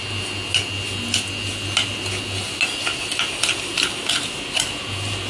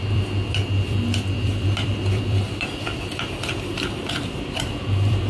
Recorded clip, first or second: first